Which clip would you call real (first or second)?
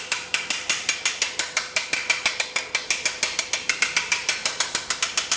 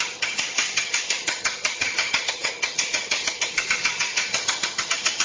first